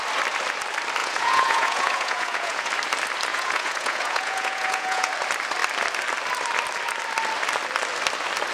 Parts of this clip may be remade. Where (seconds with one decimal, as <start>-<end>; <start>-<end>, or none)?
1.0-2.7; 3.3-5.1